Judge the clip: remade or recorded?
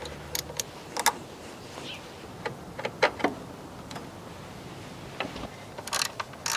recorded